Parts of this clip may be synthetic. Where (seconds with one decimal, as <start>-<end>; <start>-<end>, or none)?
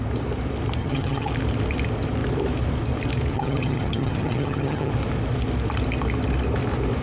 0.8-1.3; 3.3-4.9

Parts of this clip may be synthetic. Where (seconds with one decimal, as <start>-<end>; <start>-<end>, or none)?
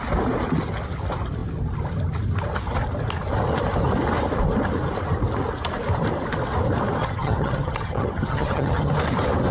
7.0-8.9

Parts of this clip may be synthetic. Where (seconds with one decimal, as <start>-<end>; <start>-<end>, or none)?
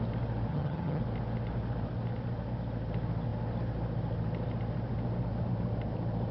0.5-1.0